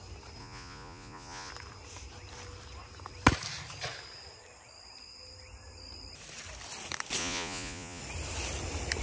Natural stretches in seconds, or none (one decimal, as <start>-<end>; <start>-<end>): 0.0-0.4; 1.5-7.2; 8.0-9.0